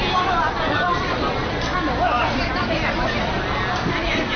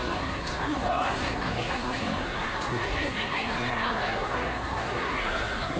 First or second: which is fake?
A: second